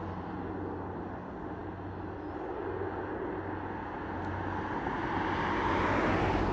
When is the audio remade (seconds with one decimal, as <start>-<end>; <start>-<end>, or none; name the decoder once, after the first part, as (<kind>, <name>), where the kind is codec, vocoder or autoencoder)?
none